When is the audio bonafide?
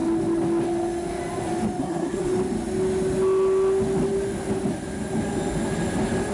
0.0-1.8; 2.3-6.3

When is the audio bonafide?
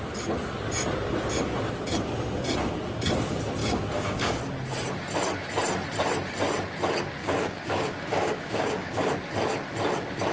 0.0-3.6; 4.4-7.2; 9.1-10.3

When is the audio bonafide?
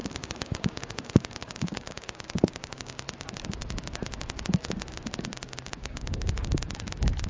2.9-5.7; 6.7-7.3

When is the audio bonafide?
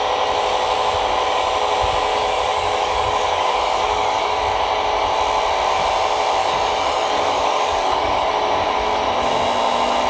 0.0-2.1; 4.4-6.4; 8.3-10.1